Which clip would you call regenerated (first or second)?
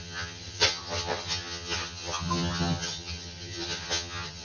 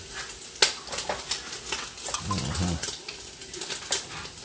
first